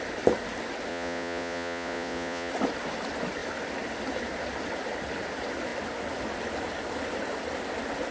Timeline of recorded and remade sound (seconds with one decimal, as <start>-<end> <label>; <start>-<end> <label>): 0.0-0.9 recorded; 0.9-2.5 remade; 2.5-8.1 recorded